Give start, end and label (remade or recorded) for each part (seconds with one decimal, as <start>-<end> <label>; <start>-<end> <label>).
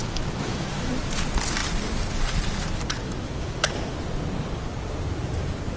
0.0-0.9 remade; 0.9-3.0 recorded; 3.0-3.9 remade; 3.9-5.8 recorded